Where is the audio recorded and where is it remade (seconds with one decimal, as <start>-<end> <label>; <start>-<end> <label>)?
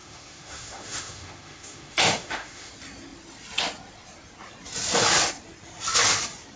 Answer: 0.0-2.7 remade; 2.7-6.6 recorded